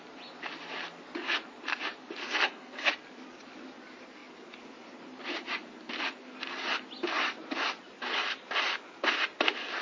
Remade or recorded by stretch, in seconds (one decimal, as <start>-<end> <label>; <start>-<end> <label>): 0.0-2.2 recorded; 2.2-2.9 remade; 2.9-9.8 recorded